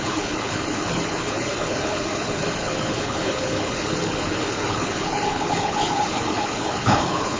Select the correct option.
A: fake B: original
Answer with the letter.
A